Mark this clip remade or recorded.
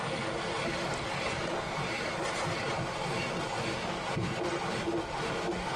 recorded